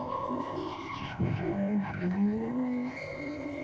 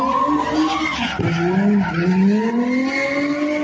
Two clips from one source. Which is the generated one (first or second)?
first